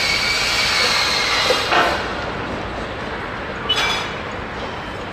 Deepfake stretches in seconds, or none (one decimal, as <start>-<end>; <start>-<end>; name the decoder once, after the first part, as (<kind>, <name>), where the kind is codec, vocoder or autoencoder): 2.1-3.7 (vocoder, BigVGAN v2)